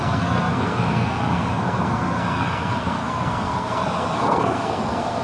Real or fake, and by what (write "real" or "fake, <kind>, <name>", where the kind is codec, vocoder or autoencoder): fake, codec, SNAC